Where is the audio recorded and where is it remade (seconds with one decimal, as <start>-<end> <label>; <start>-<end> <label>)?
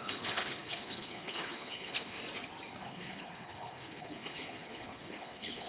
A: 0.0-2.2 remade; 2.2-2.8 recorded; 2.8-5.7 remade